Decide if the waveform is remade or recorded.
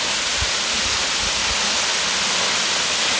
recorded